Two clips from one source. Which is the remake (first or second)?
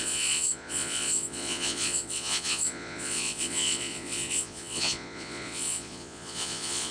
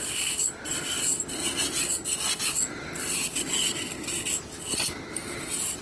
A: first